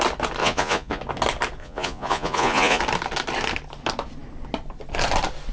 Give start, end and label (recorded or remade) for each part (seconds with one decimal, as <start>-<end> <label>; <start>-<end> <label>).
0.0-0.4 recorded; 0.4-1.0 remade; 1.0-1.6 recorded; 1.6-2.8 remade; 2.8-5.5 recorded